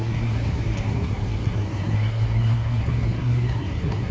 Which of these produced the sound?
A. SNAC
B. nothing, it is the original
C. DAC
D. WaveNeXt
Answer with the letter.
A